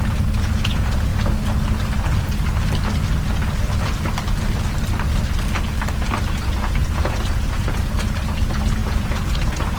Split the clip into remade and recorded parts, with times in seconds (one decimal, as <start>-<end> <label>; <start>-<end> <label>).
0.0-1.1 remade; 1.1-6.3 recorded; 6.3-9.8 remade